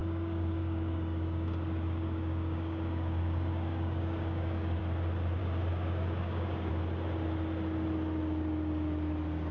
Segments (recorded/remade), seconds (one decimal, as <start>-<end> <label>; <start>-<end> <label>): 0.0-4.8 remade; 4.8-5.4 recorded; 5.4-6.7 remade; 6.7-9.5 recorded